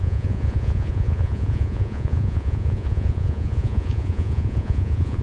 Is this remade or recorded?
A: remade